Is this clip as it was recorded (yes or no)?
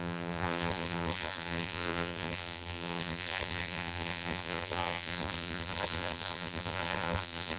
no